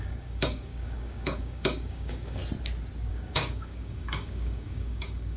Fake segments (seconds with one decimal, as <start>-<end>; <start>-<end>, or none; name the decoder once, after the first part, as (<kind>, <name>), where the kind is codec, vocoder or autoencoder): 0.0-2.4 (codec, DAC); 3.1-5.4